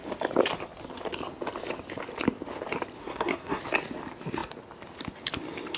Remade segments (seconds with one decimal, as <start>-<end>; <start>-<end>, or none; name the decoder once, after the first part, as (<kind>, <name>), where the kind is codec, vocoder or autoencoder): 3.0-3.6 (codec, SNAC)

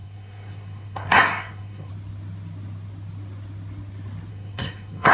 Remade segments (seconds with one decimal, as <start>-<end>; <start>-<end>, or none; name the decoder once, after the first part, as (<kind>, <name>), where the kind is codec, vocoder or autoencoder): 0.0-1.9 (codec, SNAC); 4.3-5.1

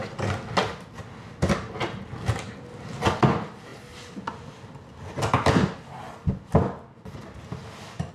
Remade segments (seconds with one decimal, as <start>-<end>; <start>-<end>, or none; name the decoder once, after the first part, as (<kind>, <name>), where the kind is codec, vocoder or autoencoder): none

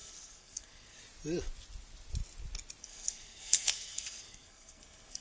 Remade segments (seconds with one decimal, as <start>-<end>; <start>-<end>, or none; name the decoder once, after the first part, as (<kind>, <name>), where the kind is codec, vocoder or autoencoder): 0.0-1.0 (codec, SNAC); 2.8-5.2

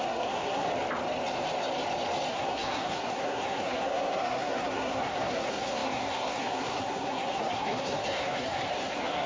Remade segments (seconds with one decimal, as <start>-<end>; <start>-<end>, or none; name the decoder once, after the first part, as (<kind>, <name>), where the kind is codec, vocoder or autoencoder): 0.0-0.7 (codec, SNAC); 2.3-9.3

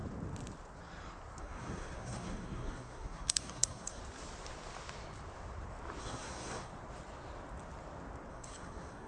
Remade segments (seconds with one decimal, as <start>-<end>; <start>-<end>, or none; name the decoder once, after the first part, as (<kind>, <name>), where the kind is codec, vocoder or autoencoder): 1.4-4.0 (codec, SNAC); 6.0-6.7; 8.3-9.1